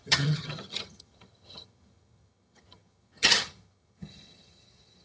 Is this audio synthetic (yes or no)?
yes